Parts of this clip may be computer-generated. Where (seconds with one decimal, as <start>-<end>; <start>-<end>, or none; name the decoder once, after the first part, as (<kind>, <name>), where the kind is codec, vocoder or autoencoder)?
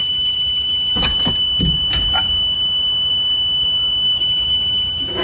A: 0.0-1.1 (autoencoder, DAC-VAE); 4.2-5.2